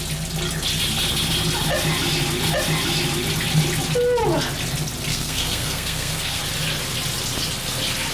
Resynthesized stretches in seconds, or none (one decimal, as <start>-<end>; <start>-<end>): 5.1-6.4